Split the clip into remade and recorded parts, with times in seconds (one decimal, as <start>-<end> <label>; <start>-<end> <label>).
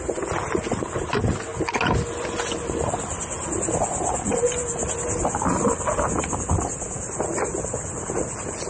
0.0-8.7 recorded